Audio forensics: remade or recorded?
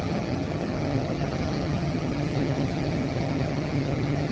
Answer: remade